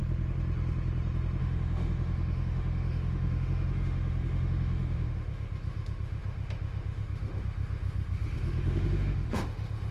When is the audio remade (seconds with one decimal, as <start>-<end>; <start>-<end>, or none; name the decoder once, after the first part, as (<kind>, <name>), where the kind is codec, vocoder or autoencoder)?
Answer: 1.4-9.9 (autoencoder, DAC-VAE)